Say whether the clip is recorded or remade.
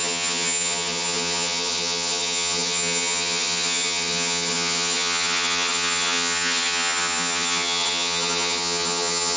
remade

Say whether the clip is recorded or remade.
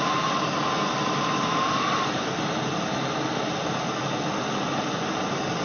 recorded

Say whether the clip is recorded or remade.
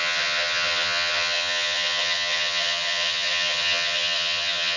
remade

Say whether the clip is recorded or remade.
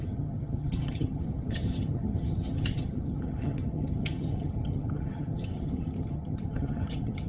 remade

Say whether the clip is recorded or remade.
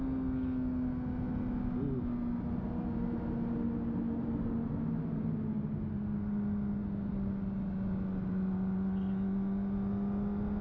recorded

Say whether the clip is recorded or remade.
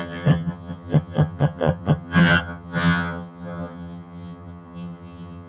remade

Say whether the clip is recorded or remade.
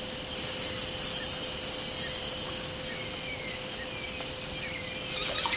recorded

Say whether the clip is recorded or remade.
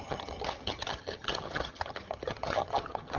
remade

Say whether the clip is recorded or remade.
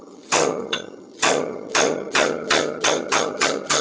remade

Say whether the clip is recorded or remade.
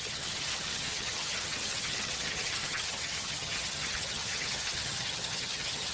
remade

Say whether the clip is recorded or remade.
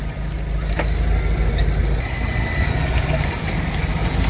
recorded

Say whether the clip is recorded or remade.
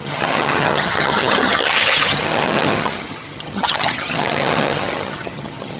remade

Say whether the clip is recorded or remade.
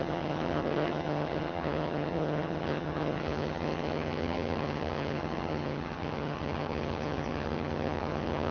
remade